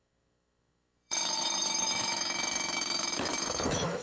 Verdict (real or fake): fake